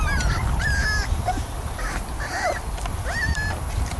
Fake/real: fake